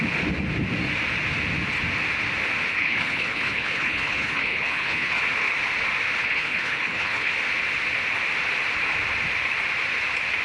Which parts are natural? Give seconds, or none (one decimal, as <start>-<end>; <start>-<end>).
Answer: 0.0-2.7; 5.2-6.2; 7.3-10.4